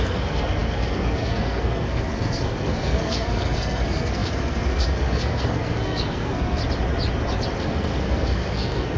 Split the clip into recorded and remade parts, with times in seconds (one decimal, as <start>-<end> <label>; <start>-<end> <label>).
0.0-6.6 remade; 6.6-7.6 recorded; 7.6-9.0 remade